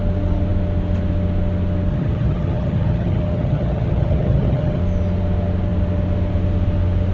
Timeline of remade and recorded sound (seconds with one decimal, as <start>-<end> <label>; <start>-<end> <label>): 0.0-1.9 recorded; 1.9-4.8 remade; 4.8-7.1 recorded